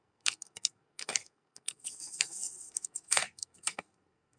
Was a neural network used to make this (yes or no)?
yes